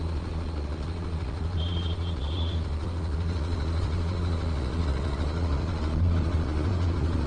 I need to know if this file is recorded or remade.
remade